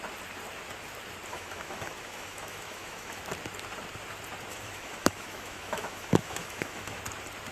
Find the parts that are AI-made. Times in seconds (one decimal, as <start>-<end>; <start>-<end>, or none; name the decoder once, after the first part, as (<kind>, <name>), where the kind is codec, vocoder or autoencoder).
1.3-3.2 (autoencoder, DAC-VAE); 4.5-7.0